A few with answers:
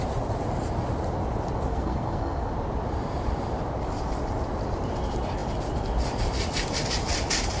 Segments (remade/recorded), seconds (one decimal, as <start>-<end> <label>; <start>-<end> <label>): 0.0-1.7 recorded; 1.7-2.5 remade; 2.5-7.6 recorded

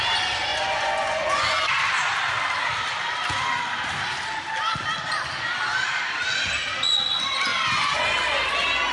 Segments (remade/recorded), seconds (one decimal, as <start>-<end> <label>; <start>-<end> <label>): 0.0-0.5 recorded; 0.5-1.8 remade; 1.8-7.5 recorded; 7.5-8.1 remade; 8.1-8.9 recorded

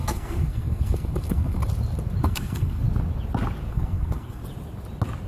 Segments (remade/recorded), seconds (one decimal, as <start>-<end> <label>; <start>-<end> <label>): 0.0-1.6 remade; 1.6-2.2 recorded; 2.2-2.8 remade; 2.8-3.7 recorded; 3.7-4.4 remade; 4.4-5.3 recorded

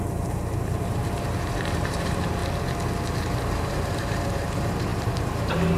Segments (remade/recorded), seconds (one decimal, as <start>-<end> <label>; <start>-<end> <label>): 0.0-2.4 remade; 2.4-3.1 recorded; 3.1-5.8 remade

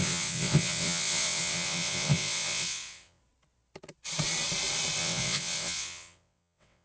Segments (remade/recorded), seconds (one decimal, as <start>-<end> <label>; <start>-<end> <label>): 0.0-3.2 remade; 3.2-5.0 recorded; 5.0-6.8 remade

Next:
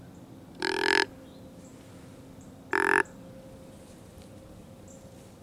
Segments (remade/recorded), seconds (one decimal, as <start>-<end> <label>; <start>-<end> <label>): 0.0-5.4 recorded